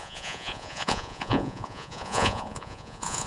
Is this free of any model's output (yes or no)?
no